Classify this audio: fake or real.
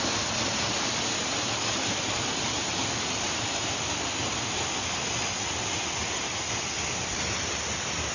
real